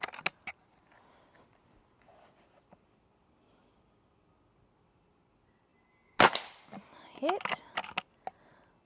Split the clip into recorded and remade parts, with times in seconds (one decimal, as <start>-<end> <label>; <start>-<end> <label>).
0.0-8.9 recorded